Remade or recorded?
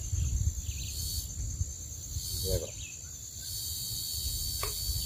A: recorded